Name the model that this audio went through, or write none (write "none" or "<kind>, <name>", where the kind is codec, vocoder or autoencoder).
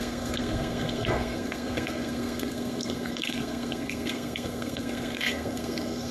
codec, SNAC